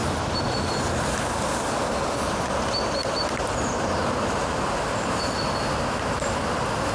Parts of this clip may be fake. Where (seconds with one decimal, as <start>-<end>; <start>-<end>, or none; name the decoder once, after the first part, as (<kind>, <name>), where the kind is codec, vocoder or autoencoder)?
3.0-5.3 (vocoder, BigVGAN v2)